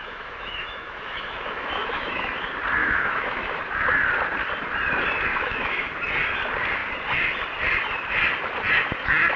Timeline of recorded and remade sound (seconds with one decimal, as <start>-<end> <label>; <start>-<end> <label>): 0.0-2.3 remade; 2.3-2.8 recorded; 2.8-3.6 remade; 3.6-5.3 recorded; 5.3-5.9 remade; 5.9-9.4 recorded